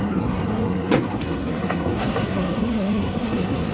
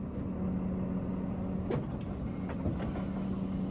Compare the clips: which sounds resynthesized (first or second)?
first